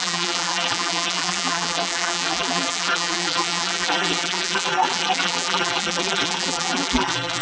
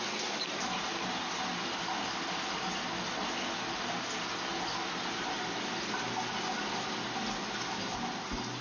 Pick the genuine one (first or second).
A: second